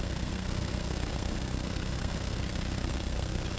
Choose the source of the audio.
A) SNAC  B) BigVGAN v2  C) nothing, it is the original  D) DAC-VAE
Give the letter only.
A